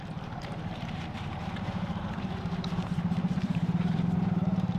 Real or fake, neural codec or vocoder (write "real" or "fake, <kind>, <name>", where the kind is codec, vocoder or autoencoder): fake, vocoder, BigVGAN v2